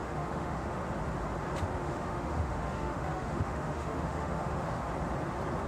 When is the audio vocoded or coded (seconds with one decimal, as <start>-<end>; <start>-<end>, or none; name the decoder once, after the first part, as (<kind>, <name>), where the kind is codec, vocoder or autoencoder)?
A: 0.0-0.8 (autoencoder, DAC-VAE); 1.8-4.9